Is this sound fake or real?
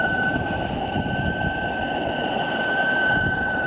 real